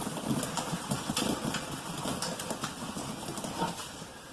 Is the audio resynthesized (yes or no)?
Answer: no